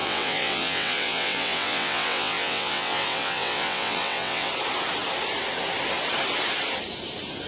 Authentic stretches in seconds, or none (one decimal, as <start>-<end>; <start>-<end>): 4.5-7.5